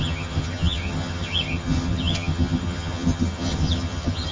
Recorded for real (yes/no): no